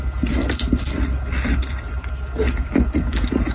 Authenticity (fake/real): real